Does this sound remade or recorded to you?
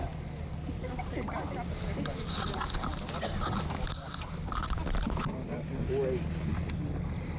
recorded